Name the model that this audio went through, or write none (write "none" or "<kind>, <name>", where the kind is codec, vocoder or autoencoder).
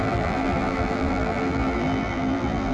vocoder, BigVGAN v2